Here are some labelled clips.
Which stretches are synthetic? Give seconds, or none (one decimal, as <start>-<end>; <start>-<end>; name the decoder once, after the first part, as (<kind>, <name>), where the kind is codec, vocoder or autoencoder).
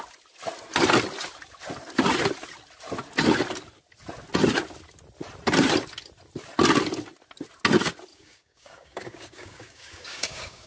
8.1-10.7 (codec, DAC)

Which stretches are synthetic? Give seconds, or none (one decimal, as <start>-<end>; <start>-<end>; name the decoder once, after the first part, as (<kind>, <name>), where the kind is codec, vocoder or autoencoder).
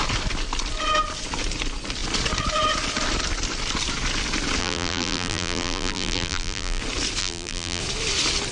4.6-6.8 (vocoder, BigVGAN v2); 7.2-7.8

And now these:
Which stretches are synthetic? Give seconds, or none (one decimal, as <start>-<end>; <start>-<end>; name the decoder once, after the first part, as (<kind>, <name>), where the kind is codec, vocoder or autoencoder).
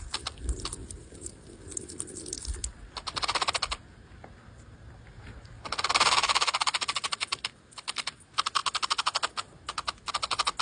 none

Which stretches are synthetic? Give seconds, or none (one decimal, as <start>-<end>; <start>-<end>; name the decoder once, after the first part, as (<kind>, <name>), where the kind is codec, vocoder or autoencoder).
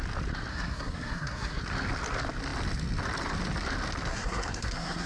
0.5-1.6 (codec, SNAC); 4.1-5.1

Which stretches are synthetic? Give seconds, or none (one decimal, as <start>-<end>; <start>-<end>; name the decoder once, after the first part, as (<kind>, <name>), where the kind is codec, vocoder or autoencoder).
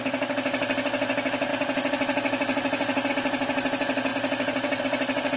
none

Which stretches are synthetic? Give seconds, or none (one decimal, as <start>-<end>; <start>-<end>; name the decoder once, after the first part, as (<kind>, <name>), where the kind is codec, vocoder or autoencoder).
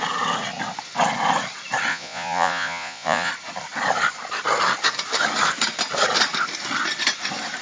1.9-3.3 (vocoder, Vocos)